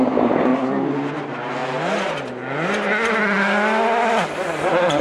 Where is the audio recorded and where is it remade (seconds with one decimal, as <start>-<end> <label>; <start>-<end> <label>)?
0.0-0.5 remade; 0.5-1.1 recorded; 1.1-1.6 remade; 1.6-4.6 recorded; 4.6-5.0 remade